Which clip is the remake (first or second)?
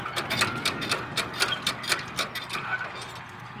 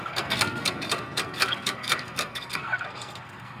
second